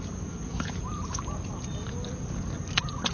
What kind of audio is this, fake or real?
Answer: real